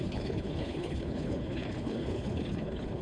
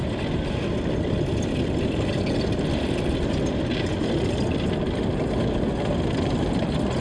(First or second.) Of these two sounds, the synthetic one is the first